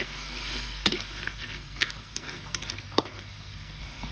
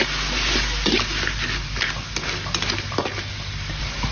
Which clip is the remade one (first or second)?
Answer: first